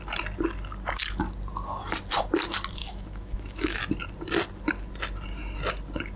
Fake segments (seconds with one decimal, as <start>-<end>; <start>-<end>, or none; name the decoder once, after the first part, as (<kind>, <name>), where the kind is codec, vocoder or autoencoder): 2.8-3.8 (autoencoder, DAC-VAE)